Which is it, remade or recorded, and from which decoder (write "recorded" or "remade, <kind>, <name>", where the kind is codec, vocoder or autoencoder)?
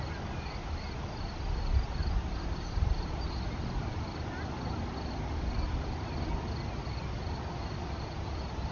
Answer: recorded